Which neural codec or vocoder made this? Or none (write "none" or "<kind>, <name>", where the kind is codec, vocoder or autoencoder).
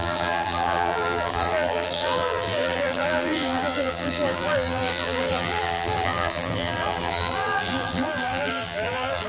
vocoder, BigVGAN v2